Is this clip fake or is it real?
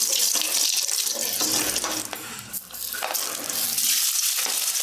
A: real